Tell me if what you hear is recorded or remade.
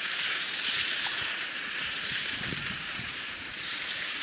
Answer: remade